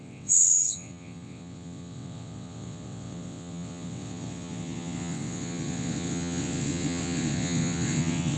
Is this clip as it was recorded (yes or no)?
no